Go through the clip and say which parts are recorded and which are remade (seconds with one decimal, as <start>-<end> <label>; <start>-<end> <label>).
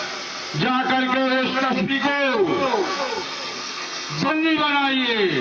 0.0-1.5 recorded; 1.5-4.3 remade; 4.3-5.4 recorded